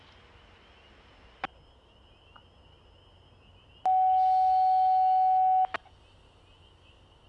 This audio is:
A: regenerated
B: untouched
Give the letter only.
B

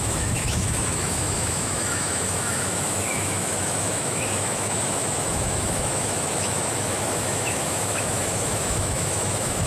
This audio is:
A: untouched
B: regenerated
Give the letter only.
B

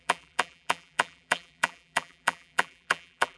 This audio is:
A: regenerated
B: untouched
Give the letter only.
A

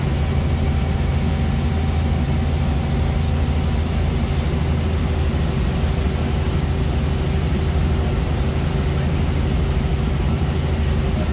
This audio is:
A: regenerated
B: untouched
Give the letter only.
B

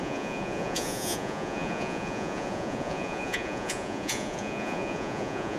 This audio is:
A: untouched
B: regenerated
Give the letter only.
B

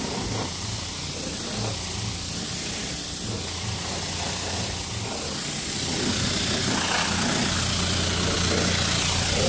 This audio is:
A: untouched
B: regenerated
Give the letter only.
A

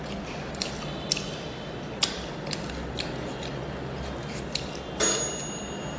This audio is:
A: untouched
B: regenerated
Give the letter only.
A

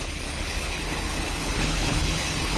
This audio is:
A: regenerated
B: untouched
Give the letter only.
A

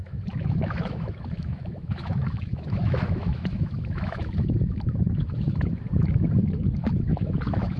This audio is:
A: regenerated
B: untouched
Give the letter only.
A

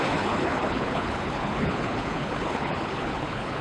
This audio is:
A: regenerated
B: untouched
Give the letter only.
A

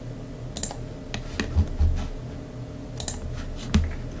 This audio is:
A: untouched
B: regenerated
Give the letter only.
A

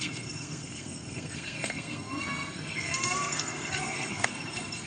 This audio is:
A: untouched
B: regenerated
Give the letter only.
B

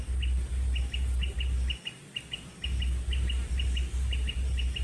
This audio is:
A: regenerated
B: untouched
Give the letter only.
B